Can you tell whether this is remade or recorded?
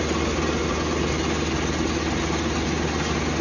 recorded